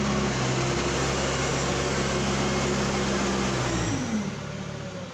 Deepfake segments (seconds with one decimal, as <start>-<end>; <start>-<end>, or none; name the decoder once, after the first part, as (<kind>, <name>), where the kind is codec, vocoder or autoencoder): none